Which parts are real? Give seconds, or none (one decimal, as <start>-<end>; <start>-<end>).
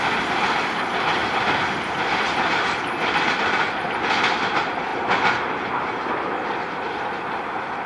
0.0-7.9